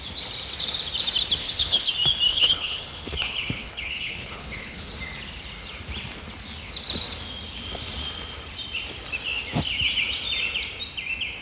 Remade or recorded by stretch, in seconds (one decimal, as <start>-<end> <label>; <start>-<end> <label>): 0.0-1.4 recorded; 1.4-1.9 remade; 1.9-2.3 recorded; 2.3-4.9 remade; 4.9-11.4 recorded